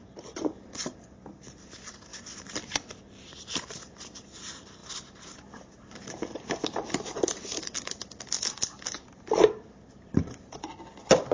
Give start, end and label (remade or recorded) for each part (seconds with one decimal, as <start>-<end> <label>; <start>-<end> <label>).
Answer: 0.0-4.8 remade; 4.8-9.1 recorded; 9.1-11.3 remade